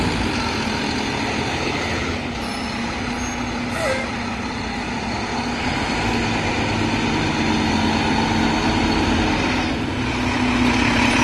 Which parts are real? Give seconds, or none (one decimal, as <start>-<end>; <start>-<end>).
0.0-1.5; 2.4-11.2